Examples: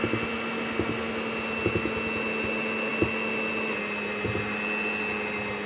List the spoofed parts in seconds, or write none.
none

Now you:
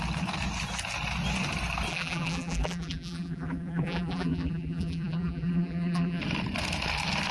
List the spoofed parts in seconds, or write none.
1.9-6.2 (vocoder, BigVGAN v2)

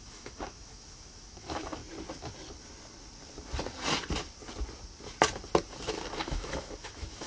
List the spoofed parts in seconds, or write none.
0.0-1.8 (autoencoder, DAC-VAE); 6.2-7.3